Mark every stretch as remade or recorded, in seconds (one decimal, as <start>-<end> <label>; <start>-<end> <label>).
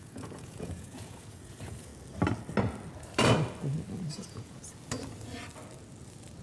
0.0-1.9 remade; 1.9-4.1 recorded; 4.1-4.6 remade; 4.6-6.4 recorded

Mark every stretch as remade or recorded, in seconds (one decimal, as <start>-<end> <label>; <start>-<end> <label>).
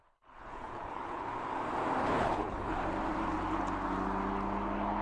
0.0-1.3 remade; 1.3-2.0 recorded; 2.0-2.8 remade; 2.8-5.0 recorded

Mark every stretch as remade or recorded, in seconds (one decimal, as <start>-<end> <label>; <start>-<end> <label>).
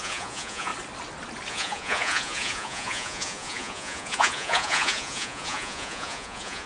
0.0-0.7 remade; 0.7-1.5 recorded; 1.5-6.7 remade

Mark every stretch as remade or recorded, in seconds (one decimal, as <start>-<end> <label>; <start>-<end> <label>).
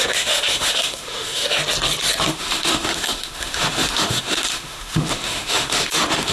0.0-1.6 remade; 1.6-2.3 recorded; 2.3-6.3 remade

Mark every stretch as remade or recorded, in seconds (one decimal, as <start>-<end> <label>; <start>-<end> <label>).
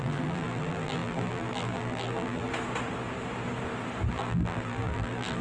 0.0-2.5 remade; 2.5-4.1 recorded; 4.1-5.4 remade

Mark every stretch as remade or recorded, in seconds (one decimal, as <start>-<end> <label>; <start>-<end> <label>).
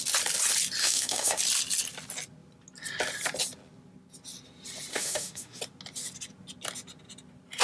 0.0-0.8 recorded; 0.8-1.4 remade; 1.4-4.9 recorded; 4.9-5.6 remade; 5.6-7.6 recorded